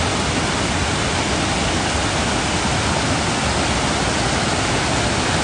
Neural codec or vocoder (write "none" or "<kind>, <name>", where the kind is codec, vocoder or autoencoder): none